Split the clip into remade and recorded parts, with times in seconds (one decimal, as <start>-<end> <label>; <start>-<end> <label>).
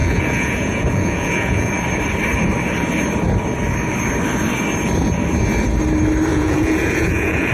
0.0-1.7 remade; 1.7-6.3 recorded; 6.3-7.5 remade